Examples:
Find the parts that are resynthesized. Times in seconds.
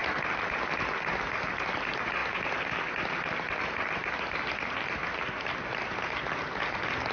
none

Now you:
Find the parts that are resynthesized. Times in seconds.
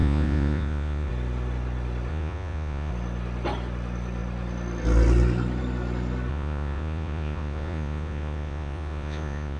0.0-1.1; 2.1-2.9; 6.3-9.6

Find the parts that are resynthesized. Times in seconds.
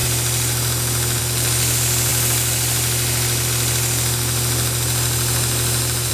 none